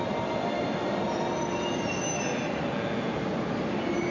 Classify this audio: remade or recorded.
recorded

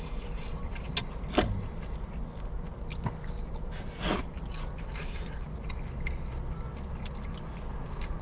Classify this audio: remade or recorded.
recorded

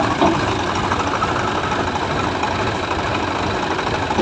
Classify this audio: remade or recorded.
recorded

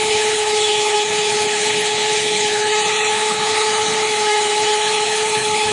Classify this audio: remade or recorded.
remade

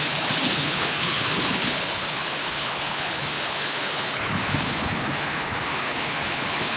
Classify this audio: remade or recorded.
remade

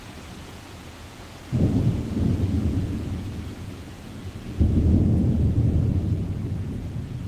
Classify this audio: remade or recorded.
remade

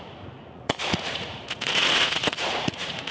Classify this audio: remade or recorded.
remade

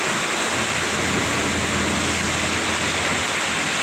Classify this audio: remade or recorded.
recorded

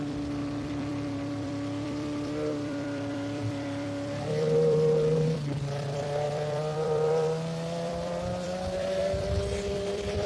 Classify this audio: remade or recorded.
remade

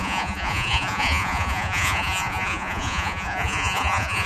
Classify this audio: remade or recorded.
remade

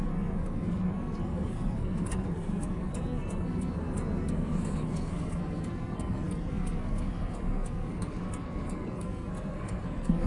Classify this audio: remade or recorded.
remade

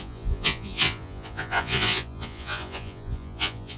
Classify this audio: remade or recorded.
remade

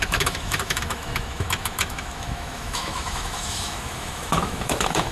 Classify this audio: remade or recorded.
remade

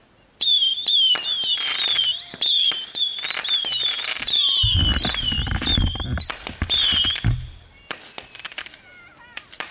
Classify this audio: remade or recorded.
recorded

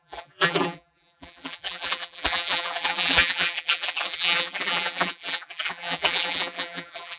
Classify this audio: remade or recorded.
remade